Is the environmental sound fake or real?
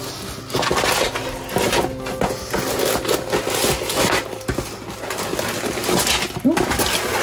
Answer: real